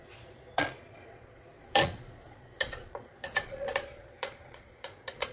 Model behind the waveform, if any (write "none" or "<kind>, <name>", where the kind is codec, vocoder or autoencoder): vocoder, Vocos